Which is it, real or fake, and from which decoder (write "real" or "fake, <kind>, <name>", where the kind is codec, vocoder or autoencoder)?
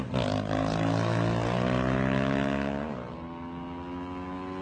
real